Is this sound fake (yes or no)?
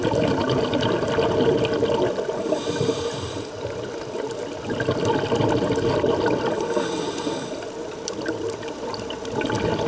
no